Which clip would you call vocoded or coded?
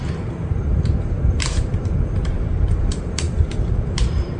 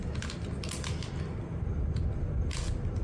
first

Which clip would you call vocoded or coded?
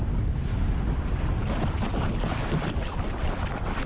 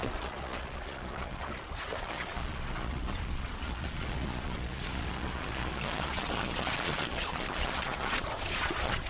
second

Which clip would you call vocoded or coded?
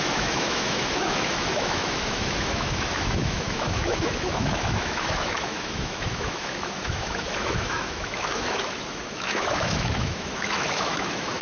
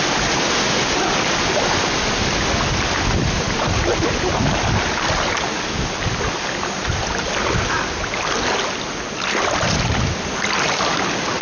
first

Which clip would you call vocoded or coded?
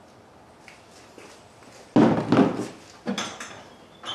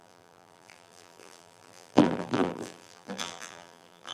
second